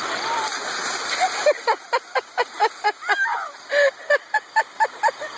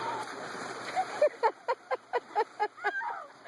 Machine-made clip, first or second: second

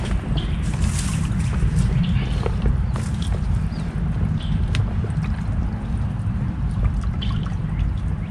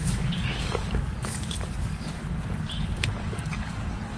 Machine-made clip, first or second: second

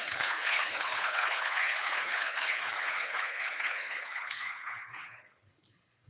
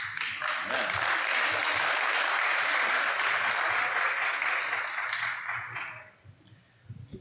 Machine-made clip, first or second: first